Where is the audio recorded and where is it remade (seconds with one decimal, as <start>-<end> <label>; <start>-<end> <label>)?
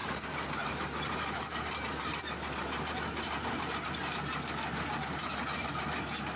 0.0-3.8 remade; 3.8-6.4 recorded